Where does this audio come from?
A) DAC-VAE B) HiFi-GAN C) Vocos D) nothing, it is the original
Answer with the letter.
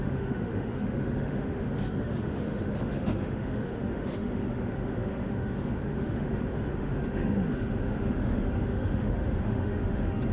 A